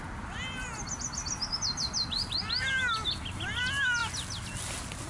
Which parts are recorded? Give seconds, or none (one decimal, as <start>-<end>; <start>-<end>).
0.0-5.1